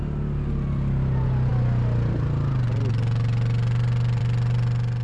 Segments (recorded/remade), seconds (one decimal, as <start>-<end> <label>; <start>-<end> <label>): 0.0-5.0 recorded